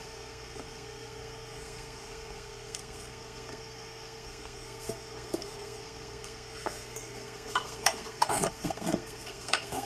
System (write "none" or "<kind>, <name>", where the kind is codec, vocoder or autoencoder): codec, SNAC